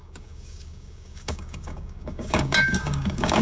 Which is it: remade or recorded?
remade